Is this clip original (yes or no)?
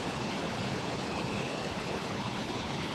no